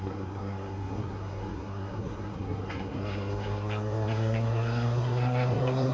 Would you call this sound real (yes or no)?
no